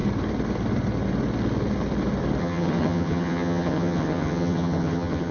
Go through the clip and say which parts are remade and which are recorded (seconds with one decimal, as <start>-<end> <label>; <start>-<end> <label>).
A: 0.0-2.4 recorded; 2.4-5.3 remade